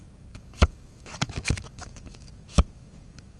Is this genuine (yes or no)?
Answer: no